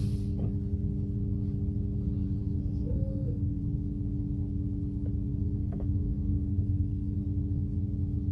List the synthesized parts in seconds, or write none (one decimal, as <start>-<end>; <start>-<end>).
2.4-3.6; 5.3-7.2